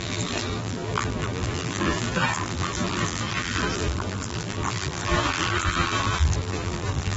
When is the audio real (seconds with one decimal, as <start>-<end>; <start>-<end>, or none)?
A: none